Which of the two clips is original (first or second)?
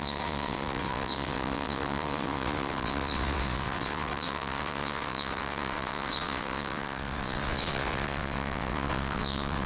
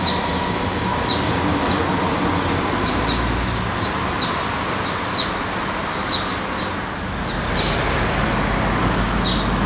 second